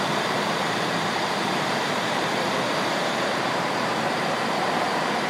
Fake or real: fake